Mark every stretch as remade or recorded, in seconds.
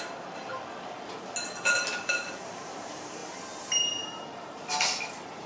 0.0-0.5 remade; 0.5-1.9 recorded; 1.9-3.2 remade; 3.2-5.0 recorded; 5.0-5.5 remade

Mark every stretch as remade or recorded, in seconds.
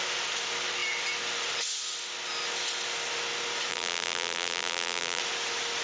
0.0-3.7 recorded; 3.7-5.2 remade; 5.2-5.8 recorded